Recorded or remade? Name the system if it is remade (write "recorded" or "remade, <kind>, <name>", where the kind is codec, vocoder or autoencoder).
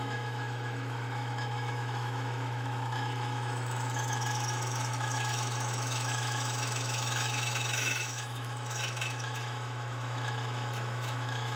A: remade, autoencoder, DAC-VAE